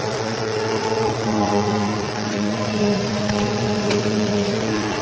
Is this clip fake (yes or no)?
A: yes